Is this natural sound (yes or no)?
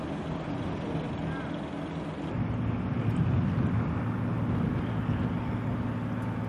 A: yes